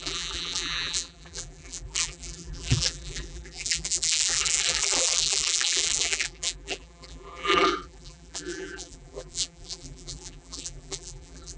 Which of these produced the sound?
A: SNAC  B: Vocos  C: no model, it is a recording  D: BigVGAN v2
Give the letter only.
D